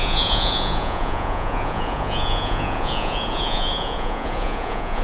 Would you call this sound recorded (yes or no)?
no